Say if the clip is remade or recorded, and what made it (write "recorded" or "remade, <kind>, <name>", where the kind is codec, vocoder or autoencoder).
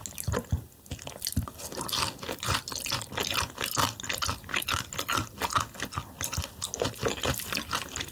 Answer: recorded